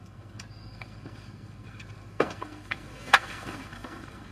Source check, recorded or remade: remade